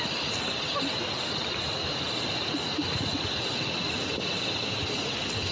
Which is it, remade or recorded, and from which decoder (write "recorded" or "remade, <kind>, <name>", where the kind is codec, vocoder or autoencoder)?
recorded